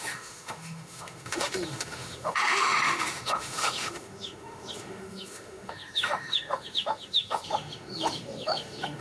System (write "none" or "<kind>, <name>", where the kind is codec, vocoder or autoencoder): autoencoder, DAC-VAE